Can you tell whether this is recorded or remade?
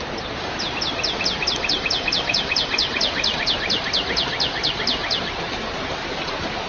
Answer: recorded